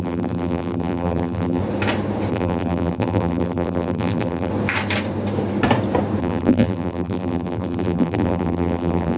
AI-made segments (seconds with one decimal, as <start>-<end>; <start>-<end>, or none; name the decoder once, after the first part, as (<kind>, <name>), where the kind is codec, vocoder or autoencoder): 0.0-1.6 (vocoder, BigVGAN v2); 2.3-4.5; 6.2-9.2